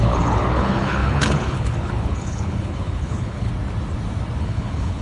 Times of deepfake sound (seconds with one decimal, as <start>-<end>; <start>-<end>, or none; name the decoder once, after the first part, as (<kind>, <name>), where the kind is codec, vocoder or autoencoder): 0.0-3.5 (codec, HILCodec); 4.4-5.0